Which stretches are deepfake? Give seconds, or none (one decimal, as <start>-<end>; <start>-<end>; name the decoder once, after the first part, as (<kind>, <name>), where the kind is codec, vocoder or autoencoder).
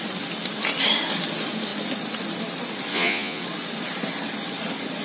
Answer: 2.9-3.4 (vocoder, Vocos)